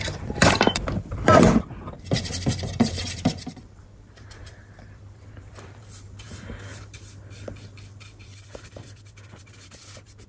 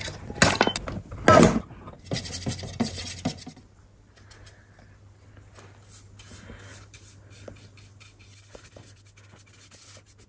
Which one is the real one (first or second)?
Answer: second